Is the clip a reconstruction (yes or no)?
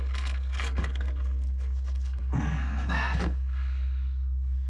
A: yes